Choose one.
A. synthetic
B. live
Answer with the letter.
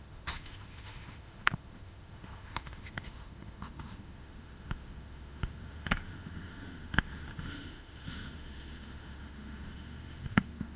A